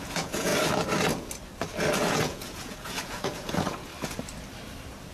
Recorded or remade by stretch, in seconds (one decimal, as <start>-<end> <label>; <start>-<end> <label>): 0.0-0.5 remade; 0.5-2.1 recorded; 2.1-3.9 remade; 3.9-5.1 recorded